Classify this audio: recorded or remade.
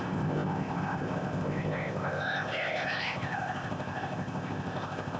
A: remade